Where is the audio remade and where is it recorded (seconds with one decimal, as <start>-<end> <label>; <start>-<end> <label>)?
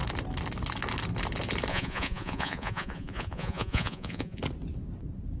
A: 0.0-1.7 recorded; 1.7-4.4 remade; 4.4-5.4 recorded